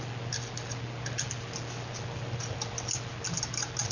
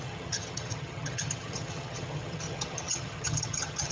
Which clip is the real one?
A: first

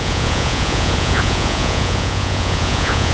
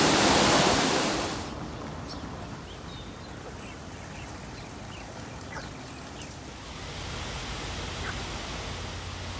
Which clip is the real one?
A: second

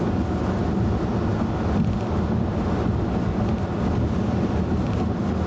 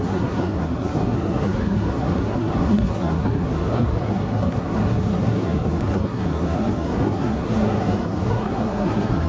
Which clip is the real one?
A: first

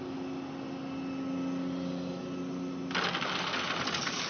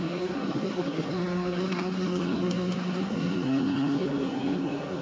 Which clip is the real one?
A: first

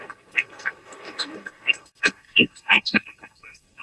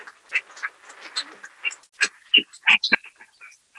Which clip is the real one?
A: second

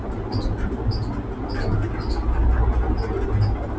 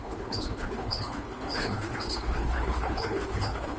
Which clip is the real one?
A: first